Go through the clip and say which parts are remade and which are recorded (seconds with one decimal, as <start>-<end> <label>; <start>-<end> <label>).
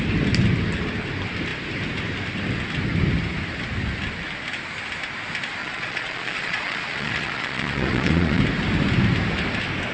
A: 0.0-5.6 recorded; 5.6-8.4 remade; 8.4-9.9 recorded